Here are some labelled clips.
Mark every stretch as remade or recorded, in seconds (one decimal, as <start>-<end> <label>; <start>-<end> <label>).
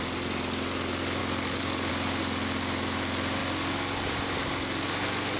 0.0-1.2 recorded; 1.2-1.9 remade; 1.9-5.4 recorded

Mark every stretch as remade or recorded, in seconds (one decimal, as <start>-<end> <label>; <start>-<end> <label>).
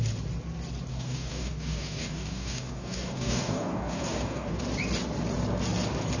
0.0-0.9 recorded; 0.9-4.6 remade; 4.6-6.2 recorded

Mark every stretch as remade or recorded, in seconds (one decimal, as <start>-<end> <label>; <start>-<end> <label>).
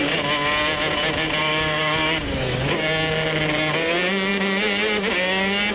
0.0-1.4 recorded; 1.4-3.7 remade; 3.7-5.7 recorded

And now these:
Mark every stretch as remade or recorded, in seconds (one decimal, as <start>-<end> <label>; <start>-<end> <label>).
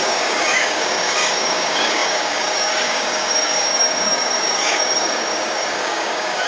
0.0-6.5 remade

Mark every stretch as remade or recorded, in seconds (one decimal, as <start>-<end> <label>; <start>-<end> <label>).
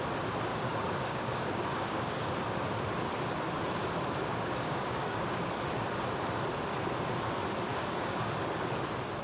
0.0-0.5 recorded; 0.5-2.3 remade; 2.3-4.2 recorded; 4.2-5.5 remade; 5.5-7.7 recorded; 7.7-8.3 remade; 8.3-9.2 recorded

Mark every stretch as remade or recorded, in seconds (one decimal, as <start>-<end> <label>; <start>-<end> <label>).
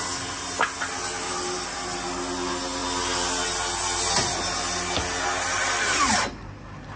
0.0-7.0 recorded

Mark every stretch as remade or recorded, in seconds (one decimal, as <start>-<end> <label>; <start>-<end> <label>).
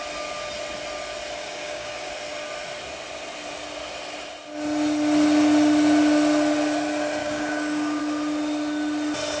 0.0-1.4 recorded; 1.4-2.1 remade; 2.1-7.2 recorded; 7.2-8.0 remade; 8.0-9.4 recorded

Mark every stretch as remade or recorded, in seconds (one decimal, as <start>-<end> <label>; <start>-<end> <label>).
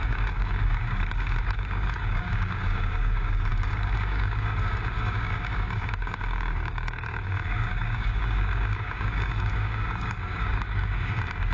0.0-11.5 remade